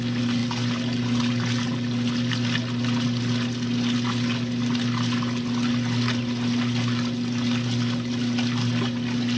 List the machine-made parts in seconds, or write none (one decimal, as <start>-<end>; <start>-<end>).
none

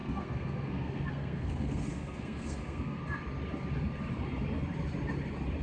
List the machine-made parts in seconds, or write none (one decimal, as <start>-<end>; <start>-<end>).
0.0-3.0

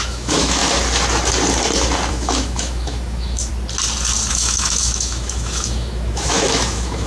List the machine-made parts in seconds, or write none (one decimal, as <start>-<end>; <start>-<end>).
0.0-0.6; 2.1-3.5; 4.3-7.1